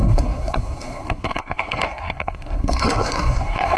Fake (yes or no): yes